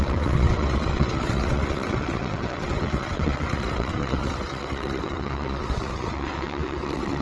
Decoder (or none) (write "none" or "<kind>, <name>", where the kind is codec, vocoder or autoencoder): vocoder, WaveNeXt